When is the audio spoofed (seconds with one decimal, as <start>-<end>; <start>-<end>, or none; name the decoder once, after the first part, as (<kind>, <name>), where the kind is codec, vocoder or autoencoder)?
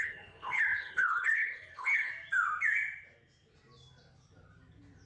0.0-2.1 (codec, HILCodec)